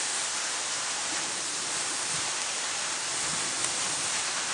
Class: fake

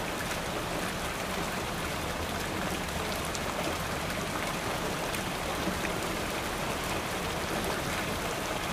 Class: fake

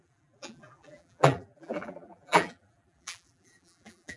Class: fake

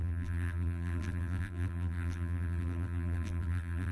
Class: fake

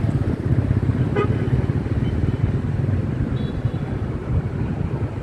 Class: fake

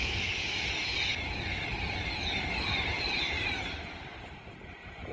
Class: real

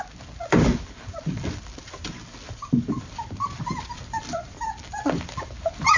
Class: fake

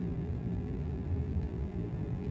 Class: fake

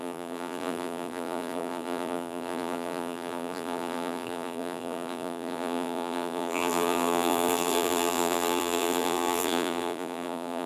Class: fake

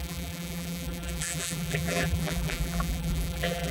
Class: fake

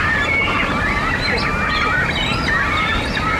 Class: real